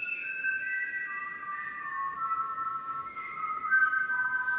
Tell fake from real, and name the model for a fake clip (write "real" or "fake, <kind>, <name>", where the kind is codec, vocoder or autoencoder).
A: fake, codec, DAC